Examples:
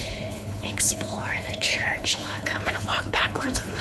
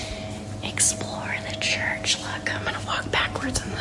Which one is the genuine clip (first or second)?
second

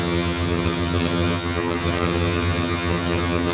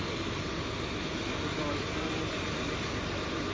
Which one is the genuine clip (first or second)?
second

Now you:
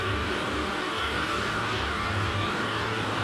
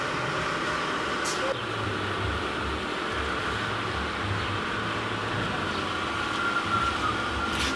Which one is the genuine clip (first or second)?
second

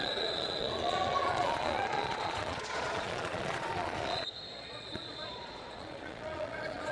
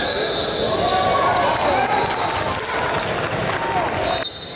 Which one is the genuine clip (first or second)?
second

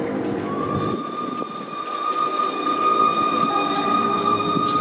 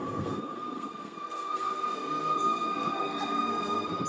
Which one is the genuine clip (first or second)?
first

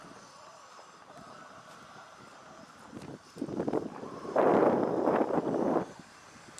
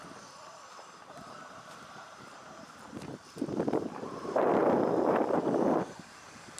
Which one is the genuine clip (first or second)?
first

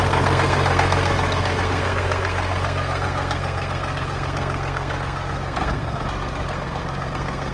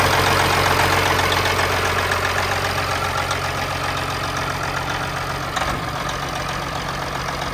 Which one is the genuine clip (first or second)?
second